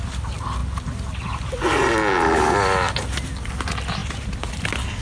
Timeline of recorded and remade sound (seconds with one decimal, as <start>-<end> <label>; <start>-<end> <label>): 0.0-5.0 recorded